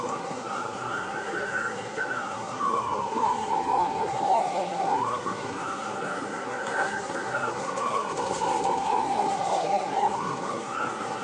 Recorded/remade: remade